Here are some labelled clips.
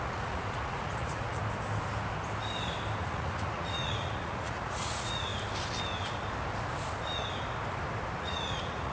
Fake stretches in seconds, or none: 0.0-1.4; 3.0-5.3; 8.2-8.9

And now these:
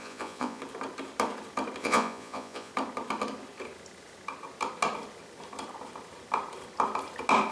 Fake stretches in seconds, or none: 0.0-0.6; 1.8-2.7

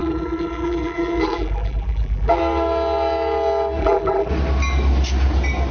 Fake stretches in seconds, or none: 0.0-2.4; 3.8-4.3

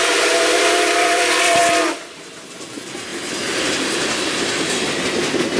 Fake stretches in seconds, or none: 0.0-1.6; 2.7-3.1; 3.7-5.6

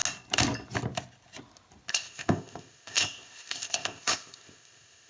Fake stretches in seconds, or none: 1.9-5.1

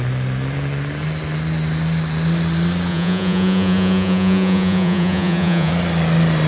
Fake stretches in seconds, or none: 2.9-5.7